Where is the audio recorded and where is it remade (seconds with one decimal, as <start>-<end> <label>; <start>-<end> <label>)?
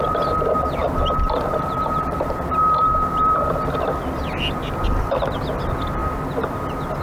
0.0-0.8 recorded; 0.8-5.0 remade; 5.0-7.0 recorded